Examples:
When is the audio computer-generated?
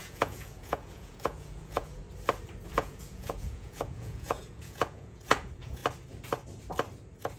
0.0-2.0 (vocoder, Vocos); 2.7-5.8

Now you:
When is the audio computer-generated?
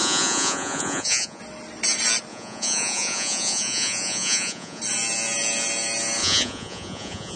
0.0-1.4 (vocoder, Vocos); 2.3-4.8; 6.2-7.4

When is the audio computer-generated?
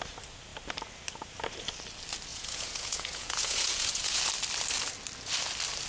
2.3-4.2 (vocoder, Vocos)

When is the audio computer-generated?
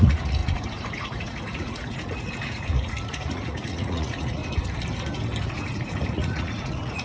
0.0-4.4 (vocoder, Vocos); 5.4-7.0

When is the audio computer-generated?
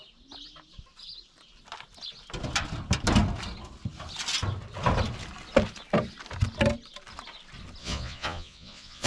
7.8-9.1 (vocoder, Vocos)